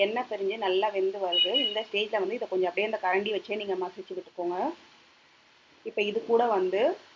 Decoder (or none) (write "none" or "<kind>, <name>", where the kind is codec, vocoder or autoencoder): none